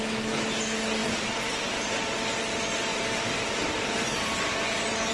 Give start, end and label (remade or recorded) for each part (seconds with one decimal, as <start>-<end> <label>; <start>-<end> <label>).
0.0-1.0 recorded; 1.0-1.9 remade; 1.9-2.9 recorded; 2.9-5.1 remade